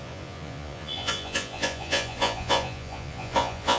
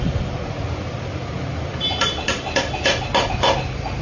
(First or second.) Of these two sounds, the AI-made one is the first